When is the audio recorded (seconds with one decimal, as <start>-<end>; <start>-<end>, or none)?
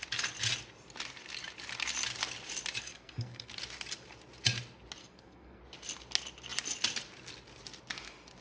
0.0-2.8; 3.5-5.0; 5.6-8.4